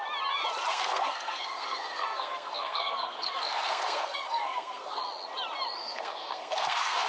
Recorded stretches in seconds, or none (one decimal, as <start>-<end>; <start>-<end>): 0.0-0.7; 5.0-5.8